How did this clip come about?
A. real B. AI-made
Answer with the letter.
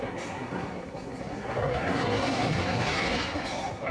B